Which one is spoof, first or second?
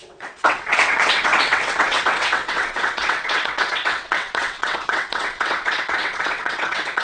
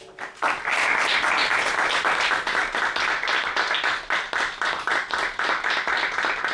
first